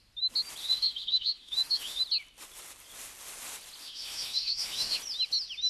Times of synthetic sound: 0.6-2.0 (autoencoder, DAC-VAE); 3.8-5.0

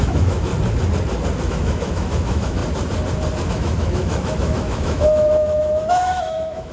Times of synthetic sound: 0.0-0.5 (autoencoder, DAC-VAE); 1.5-2.6; 3.5-6.7

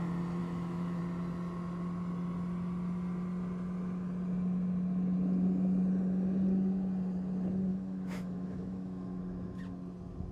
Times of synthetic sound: 0.4-1.0 (autoencoder, DAC-VAE); 7.7-9.2

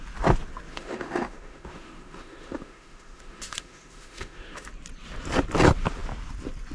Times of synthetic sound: 0.7-4.7 (autoencoder, DAC-VAE)